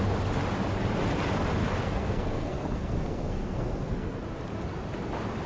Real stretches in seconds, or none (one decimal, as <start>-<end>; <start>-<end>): 0.0-1.8; 4.2-5.5

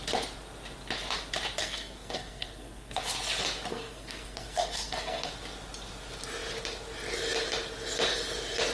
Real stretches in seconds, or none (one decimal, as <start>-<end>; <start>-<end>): 0.0-1.6; 3.0-3.7; 5.3-8.7